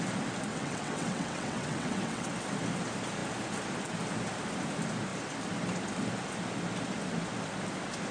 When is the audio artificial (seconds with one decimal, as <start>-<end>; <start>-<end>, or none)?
0.5-2.3